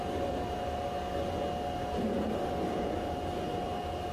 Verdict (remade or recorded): recorded